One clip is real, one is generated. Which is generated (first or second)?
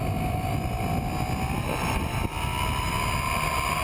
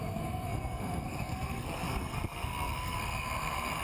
second